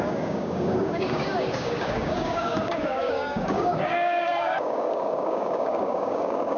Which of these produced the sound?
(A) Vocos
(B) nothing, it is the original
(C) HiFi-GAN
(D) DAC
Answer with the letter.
D